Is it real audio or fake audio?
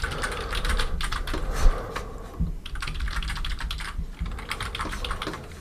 real